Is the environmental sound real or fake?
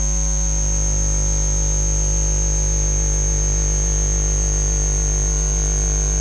real